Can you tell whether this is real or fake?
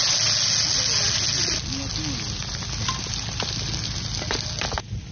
real